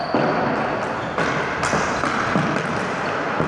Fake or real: real